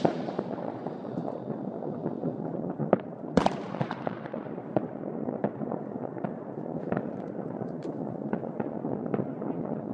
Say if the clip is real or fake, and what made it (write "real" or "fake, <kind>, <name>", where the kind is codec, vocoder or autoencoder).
fake, vocoder, Vocos